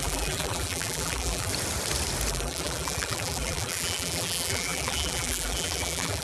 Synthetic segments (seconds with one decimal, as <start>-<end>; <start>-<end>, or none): 0.0-1.5; 2.3-6.2